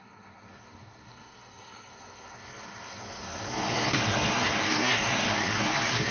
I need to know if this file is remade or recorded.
remade